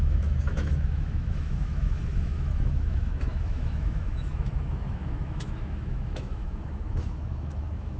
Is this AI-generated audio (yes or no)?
yes